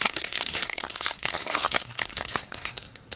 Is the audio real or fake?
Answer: fake